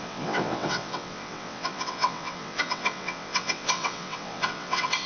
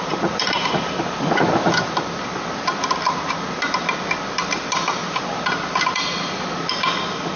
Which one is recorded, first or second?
second